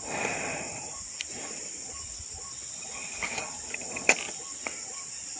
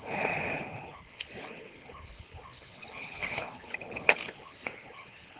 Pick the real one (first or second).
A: first